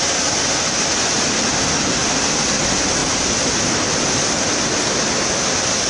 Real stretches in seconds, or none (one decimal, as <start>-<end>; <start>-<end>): 0.0-5.9